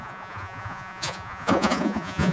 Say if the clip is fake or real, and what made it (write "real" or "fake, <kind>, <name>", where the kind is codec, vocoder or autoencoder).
fake, vocoder, Vocos